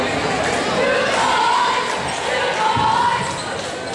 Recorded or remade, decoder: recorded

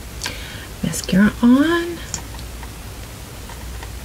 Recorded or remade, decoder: recorded